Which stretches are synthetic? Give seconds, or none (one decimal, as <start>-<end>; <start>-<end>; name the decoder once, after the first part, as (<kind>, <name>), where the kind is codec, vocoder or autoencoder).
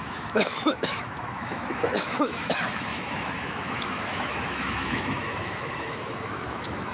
0.0-6.9 (autoencoder, DAC-VAE)